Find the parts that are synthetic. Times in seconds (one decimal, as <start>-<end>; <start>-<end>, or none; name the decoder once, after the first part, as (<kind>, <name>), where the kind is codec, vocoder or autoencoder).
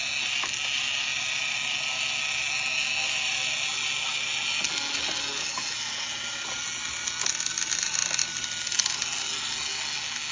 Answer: none